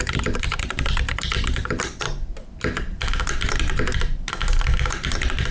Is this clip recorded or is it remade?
recorded